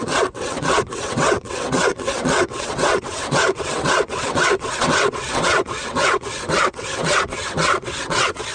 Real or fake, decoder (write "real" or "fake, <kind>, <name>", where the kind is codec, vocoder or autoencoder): fake, vocoder, WaveNeXt